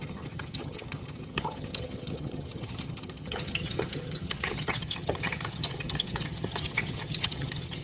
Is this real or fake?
fake